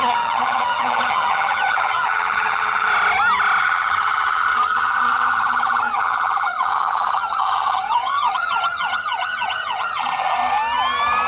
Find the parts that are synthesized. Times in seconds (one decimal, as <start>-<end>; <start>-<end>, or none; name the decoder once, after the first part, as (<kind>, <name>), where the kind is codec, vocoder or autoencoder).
0.0-2.9 (vocoder, HiFi-GAN); 3.6-10.4